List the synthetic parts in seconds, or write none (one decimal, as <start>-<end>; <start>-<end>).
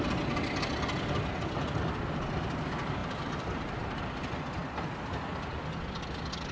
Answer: 3.0-4.0